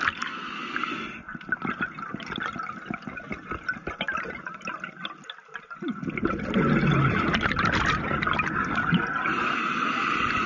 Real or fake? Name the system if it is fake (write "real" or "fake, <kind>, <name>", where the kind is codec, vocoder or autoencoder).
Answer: real